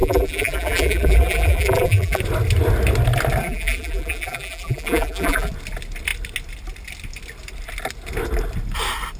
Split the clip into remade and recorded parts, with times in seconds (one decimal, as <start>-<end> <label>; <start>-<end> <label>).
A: 0.0-2.2 remade; 2.2-3.4 recorded; 3.4-5.5 remade; 5.5-9.2 recorded